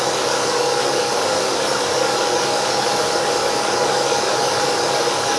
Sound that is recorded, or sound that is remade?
remade